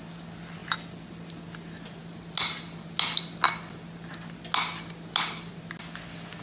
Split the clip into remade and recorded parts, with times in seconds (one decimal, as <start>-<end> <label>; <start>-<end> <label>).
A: 0.0-6.4 recorded